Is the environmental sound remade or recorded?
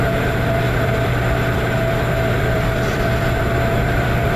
remade